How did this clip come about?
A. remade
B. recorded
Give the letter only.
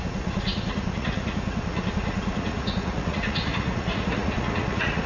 A